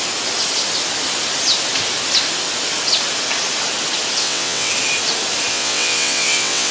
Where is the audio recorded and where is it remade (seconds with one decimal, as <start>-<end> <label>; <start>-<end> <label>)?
0.0-4.2 recorded; 4.2-4.7 remade; 4.7-5.5 recorded; 5.5-6.7 remade